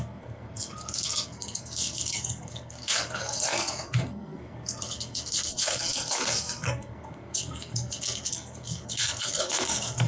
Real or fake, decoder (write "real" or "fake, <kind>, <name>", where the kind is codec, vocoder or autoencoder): fake, codec, SNAC